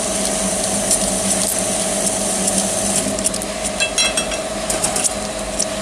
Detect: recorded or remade recorded